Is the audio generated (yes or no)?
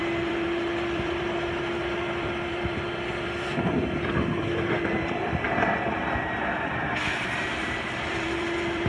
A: yes